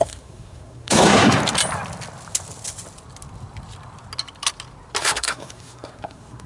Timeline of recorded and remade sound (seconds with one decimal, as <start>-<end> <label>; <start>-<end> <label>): 0.0-1.4 remade; 1.4-5.0 recorded; 5.0-6.5 remade